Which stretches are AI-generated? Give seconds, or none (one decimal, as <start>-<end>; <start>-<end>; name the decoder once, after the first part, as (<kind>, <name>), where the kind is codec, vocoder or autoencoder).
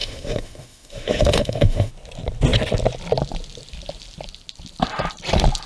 0.0-1.9 (autoencoder, DAC-VAE)